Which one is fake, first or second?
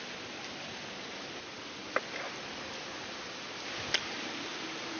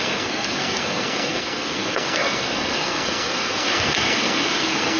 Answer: second